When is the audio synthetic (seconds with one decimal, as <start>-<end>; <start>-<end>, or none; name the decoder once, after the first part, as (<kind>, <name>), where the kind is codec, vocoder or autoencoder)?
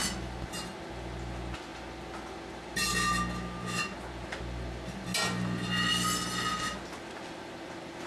none